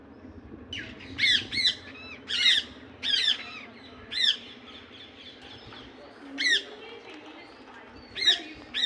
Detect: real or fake real